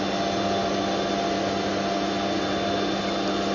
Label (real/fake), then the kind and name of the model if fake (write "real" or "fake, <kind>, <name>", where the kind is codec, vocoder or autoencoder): real